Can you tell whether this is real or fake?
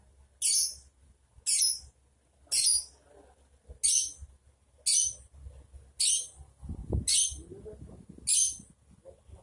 real